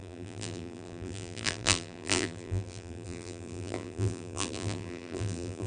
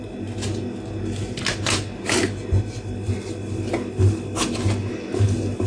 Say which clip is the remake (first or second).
first